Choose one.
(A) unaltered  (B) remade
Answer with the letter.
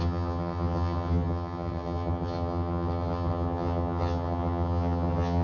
B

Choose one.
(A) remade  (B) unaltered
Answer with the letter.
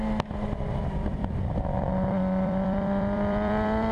A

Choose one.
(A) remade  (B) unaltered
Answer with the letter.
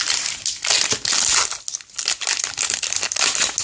B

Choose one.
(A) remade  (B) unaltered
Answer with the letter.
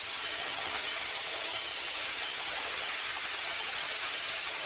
A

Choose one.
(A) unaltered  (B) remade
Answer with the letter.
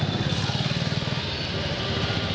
A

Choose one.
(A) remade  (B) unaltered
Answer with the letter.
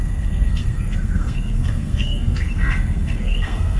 A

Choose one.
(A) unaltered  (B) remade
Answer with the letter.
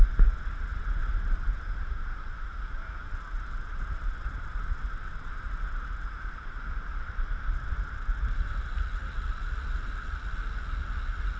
A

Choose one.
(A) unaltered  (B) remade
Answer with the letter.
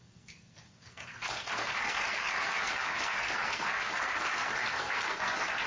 B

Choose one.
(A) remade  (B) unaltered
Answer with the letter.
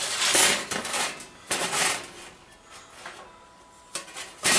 B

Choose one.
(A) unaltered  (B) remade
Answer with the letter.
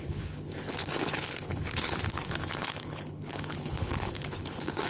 B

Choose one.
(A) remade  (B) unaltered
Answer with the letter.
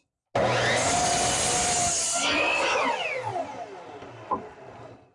B